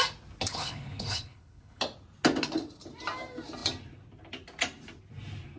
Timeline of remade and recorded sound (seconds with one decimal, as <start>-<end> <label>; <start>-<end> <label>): 0.0-0.5 recorded; 0.5-1.8 remade; 1.8-5.6 recorded

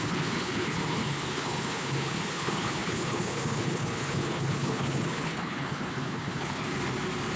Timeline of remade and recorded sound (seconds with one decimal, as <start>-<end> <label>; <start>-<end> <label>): 0.0-6.6 remade; 6.6-7.4 recorded

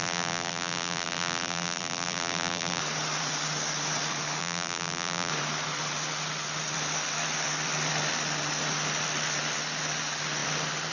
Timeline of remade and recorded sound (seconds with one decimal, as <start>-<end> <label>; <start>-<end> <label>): 0.0-2.8 remade; 2.8-4.4 recorded; 4.4-5.3 remade; 5.3-10.9 recorded

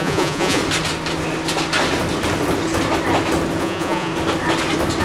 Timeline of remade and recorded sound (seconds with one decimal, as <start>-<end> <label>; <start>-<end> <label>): 0.0-0.6 remade; 0.6-3.6 recorded; 3.6-4.1 remade; 4.1-5.0 recorded

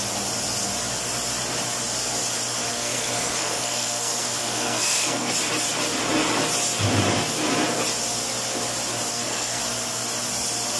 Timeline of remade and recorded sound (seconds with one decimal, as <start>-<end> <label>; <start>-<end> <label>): 0.0-2.7 recorded; 2.7-5.3 remade; 5.3-9.1 recorded; 9.1-9.6 remade; 9.6-10.8 recorded

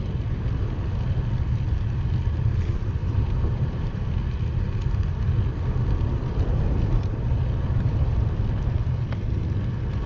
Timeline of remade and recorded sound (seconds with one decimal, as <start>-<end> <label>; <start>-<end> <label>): 0.0-3.0 recorded; 3.0-4.0 remade; 4.0-10.1 recorded

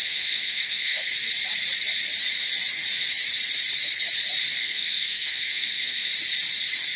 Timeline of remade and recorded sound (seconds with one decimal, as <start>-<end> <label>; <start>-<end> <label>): 0.0-1.1 remade; 1.1-4.6 recorded; 4.6-6.1 remade; 6.1-7.0 recorded